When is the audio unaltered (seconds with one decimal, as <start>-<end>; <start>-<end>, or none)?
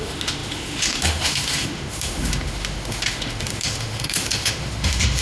none